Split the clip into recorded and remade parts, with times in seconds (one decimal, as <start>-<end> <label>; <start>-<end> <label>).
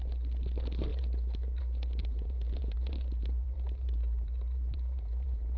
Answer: 0.0-0.9 recorded; 0.9-1.6 remade; 1.6-2.0 recorded; 2.0-5.6 remade